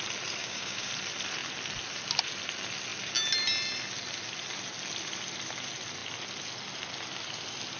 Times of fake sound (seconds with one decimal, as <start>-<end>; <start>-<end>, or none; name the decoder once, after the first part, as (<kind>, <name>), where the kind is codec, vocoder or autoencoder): 0.4-0.9 (codec, DAC)